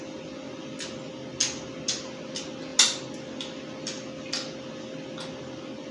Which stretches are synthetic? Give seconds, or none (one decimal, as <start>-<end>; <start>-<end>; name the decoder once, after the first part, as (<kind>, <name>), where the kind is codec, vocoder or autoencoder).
none